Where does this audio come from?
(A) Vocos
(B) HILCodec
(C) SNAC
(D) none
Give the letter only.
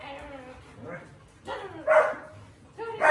D